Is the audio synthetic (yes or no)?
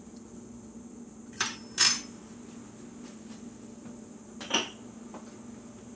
no